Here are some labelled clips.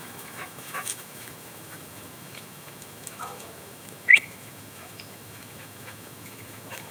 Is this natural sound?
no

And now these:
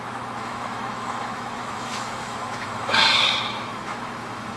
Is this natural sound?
no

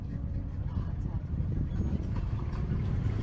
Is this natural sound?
yes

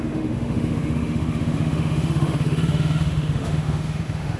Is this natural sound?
no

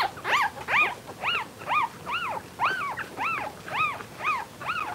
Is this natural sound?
yes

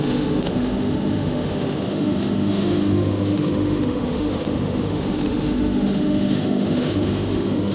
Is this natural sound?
no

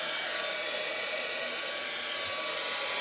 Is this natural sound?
yes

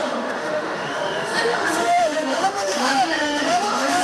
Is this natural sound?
no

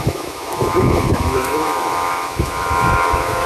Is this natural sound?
no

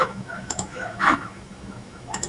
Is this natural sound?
no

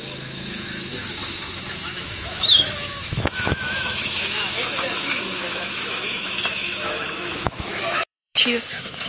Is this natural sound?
no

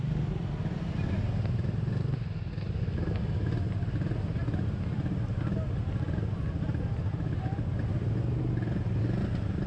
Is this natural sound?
yes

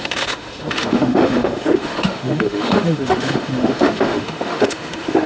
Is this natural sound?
no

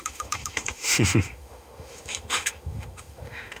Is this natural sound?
no